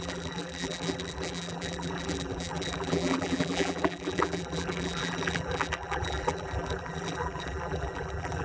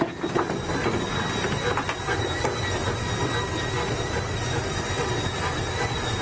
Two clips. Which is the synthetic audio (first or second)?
first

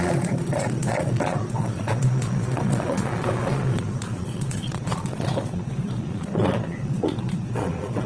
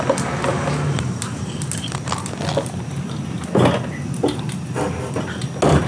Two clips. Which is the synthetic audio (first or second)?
first